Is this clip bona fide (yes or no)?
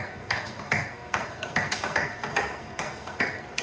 no